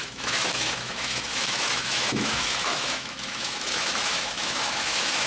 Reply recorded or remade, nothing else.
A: remade